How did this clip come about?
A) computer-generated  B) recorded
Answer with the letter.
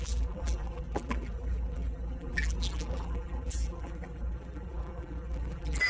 A